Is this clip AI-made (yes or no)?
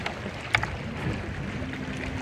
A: no